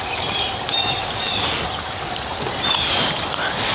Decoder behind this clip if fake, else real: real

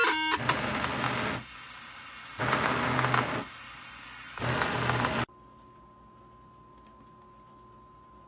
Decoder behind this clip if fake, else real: real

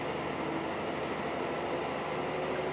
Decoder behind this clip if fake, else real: real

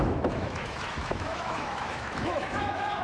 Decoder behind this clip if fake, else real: fake, autoencoder, DAC-VAE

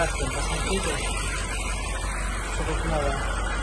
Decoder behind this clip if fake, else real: real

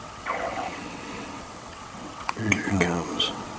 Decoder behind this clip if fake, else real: fake, vocoder, WaveNeXt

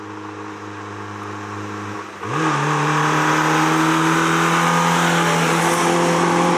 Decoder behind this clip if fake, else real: real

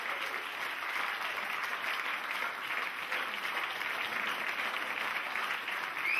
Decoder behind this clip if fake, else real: real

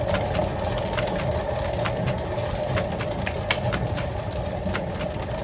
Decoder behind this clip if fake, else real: real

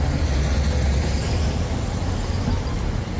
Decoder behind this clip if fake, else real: real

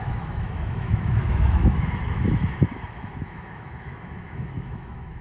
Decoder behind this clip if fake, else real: fake, autoencoder, DAC-VAE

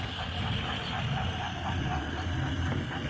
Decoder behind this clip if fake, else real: real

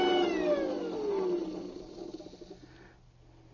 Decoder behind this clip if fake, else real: real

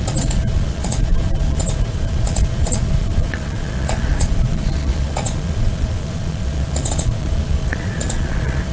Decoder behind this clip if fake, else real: fake, vocoder, Vocos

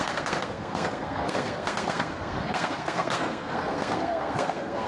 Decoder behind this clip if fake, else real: fake, codec, SNAC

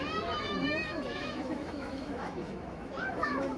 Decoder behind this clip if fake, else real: fake, autoencoder, DAC-VAE